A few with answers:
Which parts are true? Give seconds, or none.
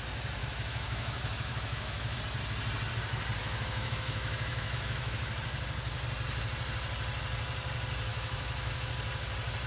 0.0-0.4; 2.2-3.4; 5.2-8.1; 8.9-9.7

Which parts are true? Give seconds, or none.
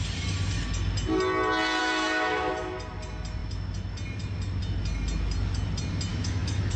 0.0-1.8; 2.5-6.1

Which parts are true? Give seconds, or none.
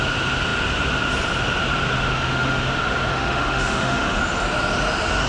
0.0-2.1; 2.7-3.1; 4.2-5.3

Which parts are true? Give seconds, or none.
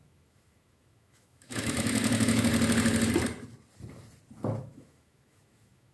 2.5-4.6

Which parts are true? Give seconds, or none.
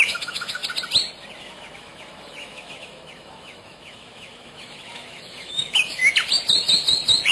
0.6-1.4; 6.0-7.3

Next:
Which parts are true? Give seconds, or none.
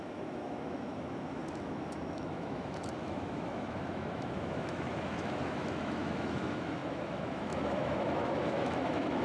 none